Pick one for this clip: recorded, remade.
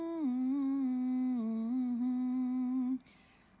recorded